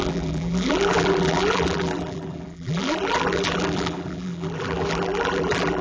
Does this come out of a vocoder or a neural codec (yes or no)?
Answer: yes